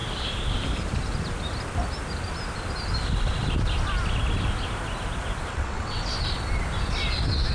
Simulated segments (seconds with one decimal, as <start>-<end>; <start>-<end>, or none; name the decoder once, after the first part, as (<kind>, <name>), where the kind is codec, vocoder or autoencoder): 5.5-6.1 (vocoder, WaveNeXt)